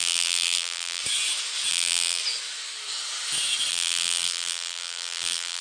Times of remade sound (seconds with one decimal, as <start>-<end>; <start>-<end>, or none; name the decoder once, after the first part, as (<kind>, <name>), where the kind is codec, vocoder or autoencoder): 0.0-1.0 (vocoder, BigVGAN v2); 1.7-2.2; 3.7-5.6